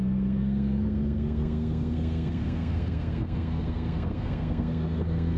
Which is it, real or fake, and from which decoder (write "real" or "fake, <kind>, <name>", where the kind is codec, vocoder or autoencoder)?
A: fake, codec, SNAC